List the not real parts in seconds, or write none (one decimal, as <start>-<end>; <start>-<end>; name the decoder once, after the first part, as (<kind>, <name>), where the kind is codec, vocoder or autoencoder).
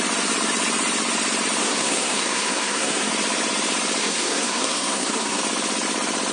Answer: 1.6-3.1 (codec, SNAC); 4.0-5.4